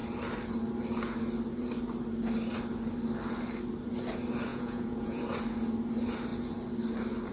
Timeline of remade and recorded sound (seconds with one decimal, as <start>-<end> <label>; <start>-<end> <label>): 0.0-4.5 recorded; 4.5-5.2 remade; 5.2-7.3 recorded